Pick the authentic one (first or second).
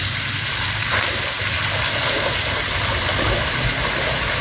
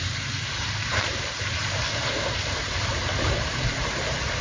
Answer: first